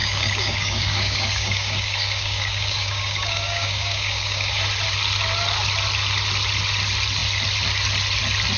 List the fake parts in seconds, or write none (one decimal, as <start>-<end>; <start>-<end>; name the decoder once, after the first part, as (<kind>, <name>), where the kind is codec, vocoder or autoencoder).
0.0-4.6 (codec, DAC)